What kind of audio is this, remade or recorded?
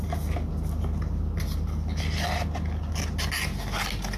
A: recorded